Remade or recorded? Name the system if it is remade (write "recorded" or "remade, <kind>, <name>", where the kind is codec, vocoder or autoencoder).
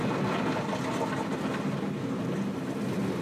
recorded